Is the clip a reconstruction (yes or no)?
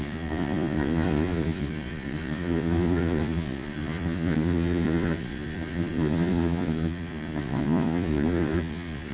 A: yes